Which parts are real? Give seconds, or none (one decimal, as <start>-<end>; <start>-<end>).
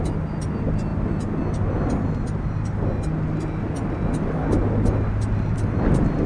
0.0-6.3